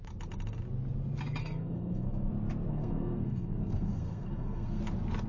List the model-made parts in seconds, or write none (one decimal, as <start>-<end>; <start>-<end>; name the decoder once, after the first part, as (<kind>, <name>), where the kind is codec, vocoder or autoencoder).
1.4-2.3 (codec, SNAC); 2.7-4.8